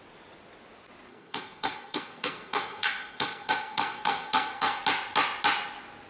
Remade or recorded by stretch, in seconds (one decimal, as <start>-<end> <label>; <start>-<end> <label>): 0.0-1.1 recorded; 1.1-4.8 remade; 4.8-6.1 recorded